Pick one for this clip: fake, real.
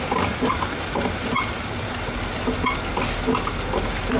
real